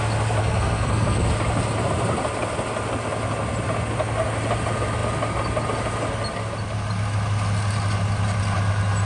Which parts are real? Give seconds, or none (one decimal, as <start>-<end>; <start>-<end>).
0.0-0.4; 1.3-9.1